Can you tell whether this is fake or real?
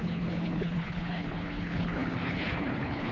fake